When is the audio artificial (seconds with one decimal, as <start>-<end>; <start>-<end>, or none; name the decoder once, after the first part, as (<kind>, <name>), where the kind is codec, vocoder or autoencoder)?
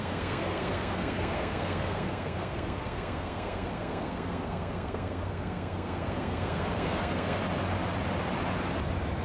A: 0.0-7.4 (codec, SNAC)